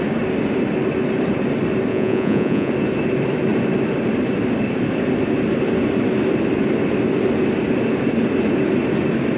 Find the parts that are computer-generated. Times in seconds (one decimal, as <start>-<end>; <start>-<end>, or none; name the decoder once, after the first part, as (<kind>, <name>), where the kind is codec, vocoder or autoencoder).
1.9-2.7 (vocoder, Vocos)